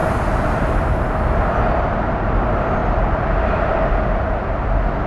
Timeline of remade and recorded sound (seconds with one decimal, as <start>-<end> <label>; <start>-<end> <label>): 0.0-5.1 recorded